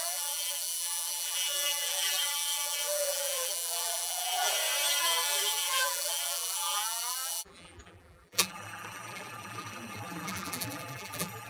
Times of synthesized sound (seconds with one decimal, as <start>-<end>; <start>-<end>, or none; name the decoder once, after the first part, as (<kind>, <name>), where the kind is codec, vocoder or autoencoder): 0.0-4.5 (vocoder, BigVGAN v2); 5.0-11.5